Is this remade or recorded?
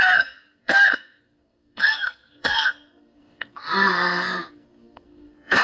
remade